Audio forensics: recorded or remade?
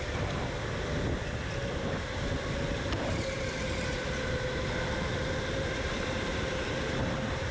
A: recorded